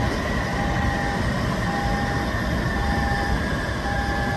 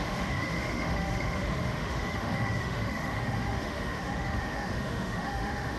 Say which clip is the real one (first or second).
first